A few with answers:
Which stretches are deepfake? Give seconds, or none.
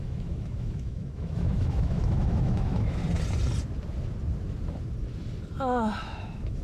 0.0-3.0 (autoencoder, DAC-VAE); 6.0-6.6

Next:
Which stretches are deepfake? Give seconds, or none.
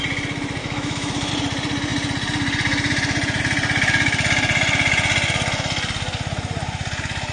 0.6-1.3 (autoencoder, DAC-VAE)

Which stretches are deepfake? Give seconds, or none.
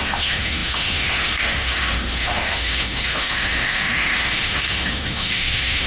0.0-5.9 (autoencoder, DAC-VAE)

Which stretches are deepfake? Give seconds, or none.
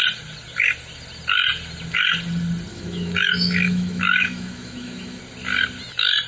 2.7-5.2 (autoencoder, DAC-VAE)